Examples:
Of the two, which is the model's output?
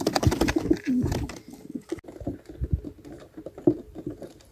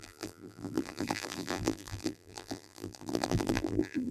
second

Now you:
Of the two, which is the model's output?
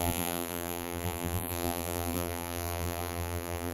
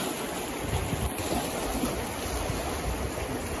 first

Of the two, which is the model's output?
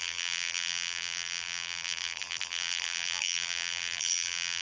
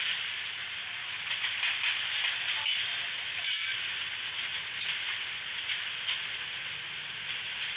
first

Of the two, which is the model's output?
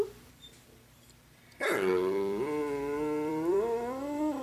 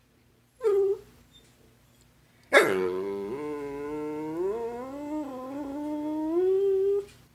first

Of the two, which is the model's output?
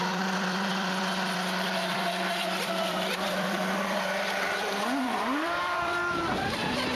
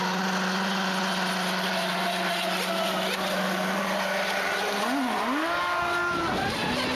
first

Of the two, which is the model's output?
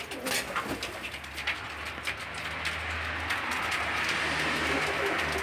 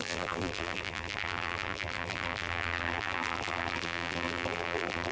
second